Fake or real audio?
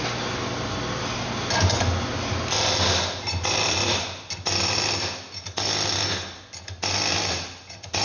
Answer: real